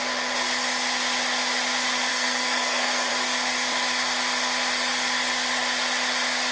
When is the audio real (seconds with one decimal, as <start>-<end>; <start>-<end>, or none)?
0.0-2.1; 3.1-6.5